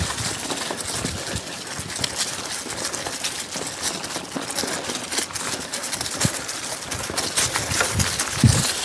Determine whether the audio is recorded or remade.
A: recorded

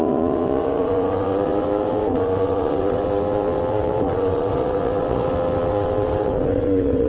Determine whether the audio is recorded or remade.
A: remade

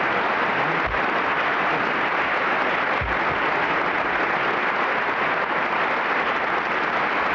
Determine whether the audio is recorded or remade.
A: recorded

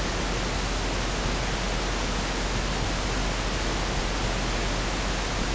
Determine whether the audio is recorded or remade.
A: recorded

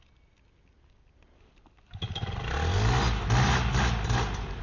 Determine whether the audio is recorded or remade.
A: recorded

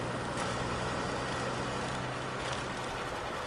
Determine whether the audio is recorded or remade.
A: recorded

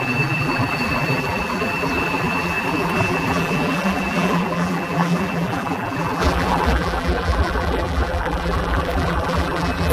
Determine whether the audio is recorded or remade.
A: remade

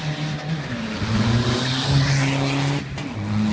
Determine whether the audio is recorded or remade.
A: recorded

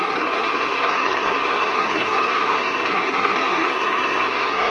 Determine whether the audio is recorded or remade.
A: remade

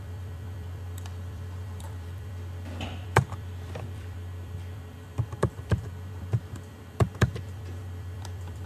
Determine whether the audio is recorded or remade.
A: remade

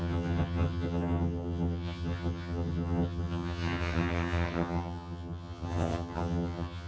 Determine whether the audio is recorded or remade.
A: remade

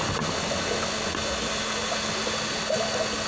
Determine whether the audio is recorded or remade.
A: recorded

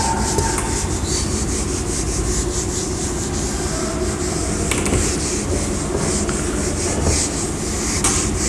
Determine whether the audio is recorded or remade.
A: recorded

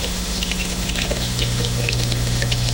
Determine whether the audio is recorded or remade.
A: remade